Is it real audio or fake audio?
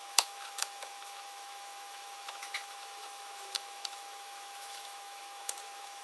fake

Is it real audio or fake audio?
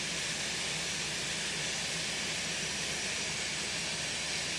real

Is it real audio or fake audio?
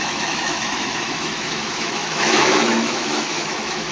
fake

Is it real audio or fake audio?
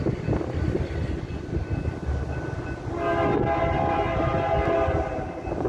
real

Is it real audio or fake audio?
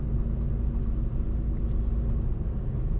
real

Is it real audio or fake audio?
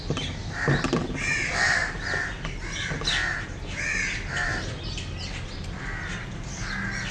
real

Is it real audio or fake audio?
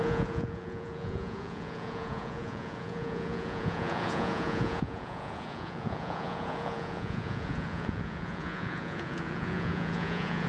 fake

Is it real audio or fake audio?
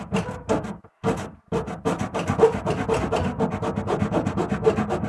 real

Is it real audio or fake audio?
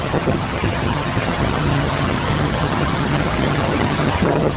fake